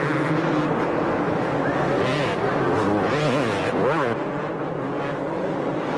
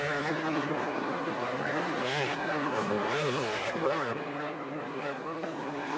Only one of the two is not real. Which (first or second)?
second